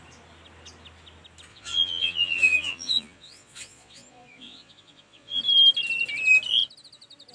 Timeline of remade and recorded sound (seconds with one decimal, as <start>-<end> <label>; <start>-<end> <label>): 0.0-1.5 recorded; 1.5-5.4 remade; 5.4-7.3 recorded